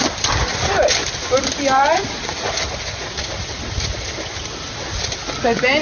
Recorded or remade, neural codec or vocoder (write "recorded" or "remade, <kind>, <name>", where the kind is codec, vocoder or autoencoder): recorded